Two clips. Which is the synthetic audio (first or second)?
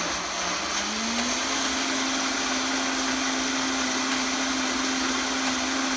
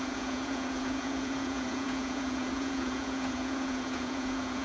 second